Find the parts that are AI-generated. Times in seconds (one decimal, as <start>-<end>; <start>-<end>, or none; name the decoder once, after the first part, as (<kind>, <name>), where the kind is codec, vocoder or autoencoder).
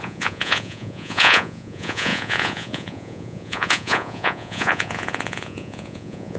0.0-6.4 (vocoder, Vocos)